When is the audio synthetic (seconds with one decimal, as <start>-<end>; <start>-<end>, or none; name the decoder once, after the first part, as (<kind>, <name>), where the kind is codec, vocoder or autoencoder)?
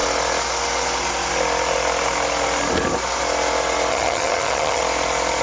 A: 3.9-4.8 (vocoder, HiFi-GAN)